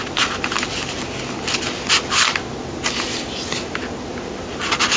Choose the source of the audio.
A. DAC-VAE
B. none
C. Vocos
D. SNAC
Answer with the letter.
B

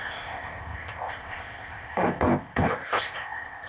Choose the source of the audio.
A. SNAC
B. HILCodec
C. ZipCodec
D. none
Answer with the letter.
C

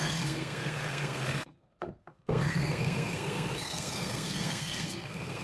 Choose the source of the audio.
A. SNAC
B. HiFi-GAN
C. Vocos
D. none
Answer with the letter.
A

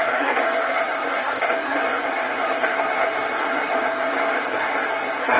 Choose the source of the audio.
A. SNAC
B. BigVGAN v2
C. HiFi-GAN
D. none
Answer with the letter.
A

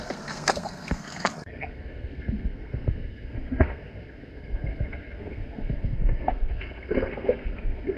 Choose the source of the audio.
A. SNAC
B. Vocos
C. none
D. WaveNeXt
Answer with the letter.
A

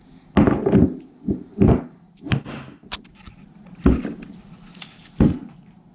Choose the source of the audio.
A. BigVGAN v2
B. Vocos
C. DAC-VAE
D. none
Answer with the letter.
D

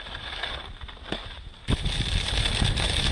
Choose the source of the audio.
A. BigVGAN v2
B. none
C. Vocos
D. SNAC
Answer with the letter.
B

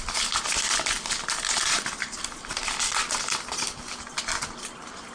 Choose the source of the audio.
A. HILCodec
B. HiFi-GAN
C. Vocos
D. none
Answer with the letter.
D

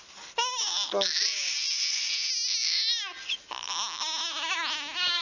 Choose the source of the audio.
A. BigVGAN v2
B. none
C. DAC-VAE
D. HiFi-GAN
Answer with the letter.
B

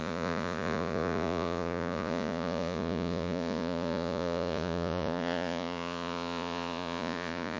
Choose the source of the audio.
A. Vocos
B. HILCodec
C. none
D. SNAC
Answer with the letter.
A